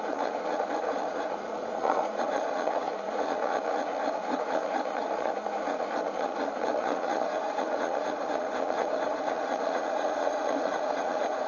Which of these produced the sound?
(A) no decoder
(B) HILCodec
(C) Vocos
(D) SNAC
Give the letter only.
C